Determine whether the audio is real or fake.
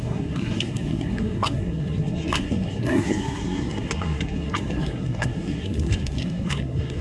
fake